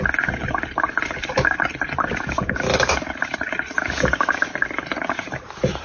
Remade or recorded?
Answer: recorded